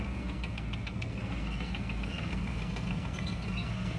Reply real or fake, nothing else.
fake